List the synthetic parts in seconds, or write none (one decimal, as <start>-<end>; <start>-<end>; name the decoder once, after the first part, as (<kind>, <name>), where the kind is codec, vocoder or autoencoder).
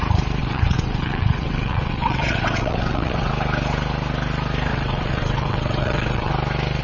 0.4-3.3 (vocoder, WaveNeXt); 4.7-6.3